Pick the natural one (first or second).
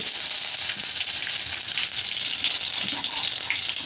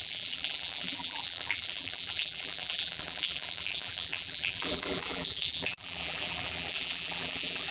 first